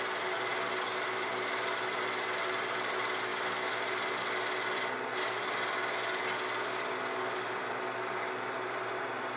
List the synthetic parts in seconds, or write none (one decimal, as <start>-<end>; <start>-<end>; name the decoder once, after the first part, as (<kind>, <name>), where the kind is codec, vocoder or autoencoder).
none